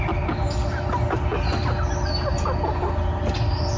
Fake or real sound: real